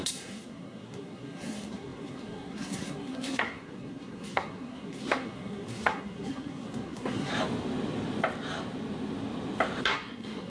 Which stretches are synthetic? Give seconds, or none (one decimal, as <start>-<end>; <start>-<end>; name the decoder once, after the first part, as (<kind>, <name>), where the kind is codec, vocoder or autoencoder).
0.0-7.3 (codec, SNAC); 9.8-10.5